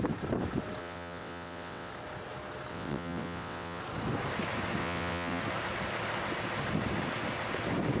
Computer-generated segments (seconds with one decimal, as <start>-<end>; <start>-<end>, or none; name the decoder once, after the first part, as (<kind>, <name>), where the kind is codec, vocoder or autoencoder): 0.8-1.9 (vocoder, WaveNeXt); 2.7-3.8; 4.8-5.4